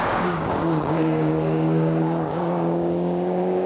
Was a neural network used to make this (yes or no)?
yes